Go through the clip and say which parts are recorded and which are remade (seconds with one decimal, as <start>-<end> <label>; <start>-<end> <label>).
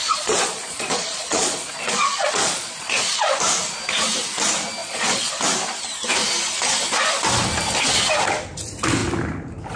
0.0-3.4 remade; 3.4-4.8 recorded; 4.8-5.3 remade; 5.3-9.8 recorded